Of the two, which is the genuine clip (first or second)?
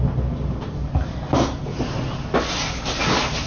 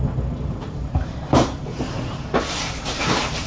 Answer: first